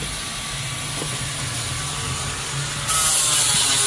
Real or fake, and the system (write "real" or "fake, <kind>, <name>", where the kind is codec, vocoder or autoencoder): real